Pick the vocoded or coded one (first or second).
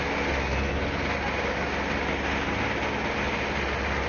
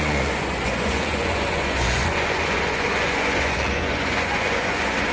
second